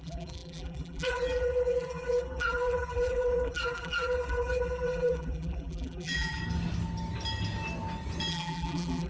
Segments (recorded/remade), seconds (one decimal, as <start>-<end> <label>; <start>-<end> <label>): 0.0-6.4 remade; 6.4-8.3 recorded; 8.3-9.1 remade